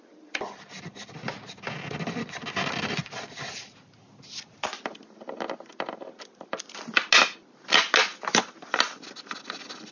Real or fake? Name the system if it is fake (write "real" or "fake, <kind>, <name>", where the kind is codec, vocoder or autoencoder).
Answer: real